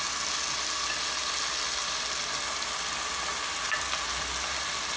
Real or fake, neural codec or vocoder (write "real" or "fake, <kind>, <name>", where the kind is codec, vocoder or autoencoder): real